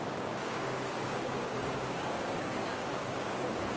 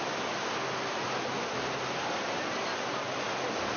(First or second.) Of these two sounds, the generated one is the first